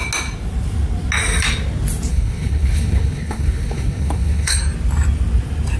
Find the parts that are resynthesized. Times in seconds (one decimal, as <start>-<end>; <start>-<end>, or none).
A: 2.1-4.6